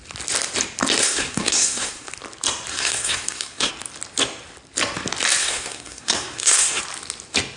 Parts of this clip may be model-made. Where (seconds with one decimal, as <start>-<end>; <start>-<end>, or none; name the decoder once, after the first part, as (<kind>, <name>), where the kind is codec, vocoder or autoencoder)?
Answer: 1.0-2.1 (codec, SNAC); 2.7-3.7; 5.4-6.8

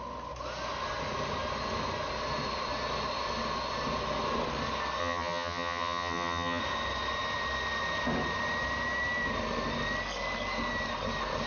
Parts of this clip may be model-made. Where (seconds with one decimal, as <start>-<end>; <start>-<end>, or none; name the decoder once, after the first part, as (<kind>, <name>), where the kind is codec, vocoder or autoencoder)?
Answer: 5.0-6.6 (vocoder, HiFi-GAN)